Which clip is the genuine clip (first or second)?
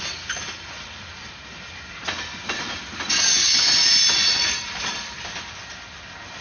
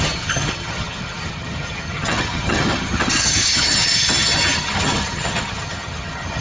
first